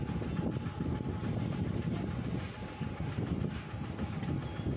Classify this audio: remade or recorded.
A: recorded